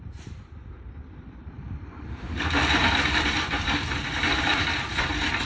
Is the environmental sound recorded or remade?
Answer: remade